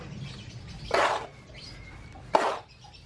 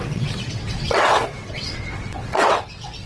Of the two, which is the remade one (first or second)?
second